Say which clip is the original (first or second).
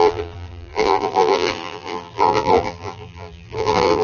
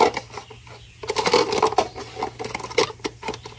second